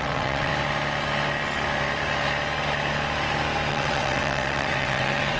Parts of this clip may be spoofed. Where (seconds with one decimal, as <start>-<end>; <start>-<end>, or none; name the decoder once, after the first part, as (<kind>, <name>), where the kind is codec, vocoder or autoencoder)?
0.0-0.5 (vocoder, WaveNeXt); 3.7-5.4